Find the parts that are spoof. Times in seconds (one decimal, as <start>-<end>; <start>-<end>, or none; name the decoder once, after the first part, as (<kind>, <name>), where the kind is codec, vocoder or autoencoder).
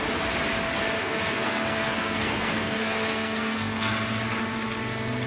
1.0-3.9 (codec, SNAC)